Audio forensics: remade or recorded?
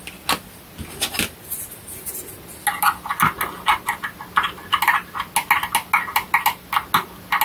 recorded